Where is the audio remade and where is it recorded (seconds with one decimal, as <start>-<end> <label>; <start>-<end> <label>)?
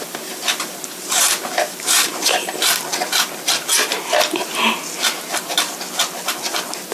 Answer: 0.0-2.5 remade; 2.5-6.9 recorded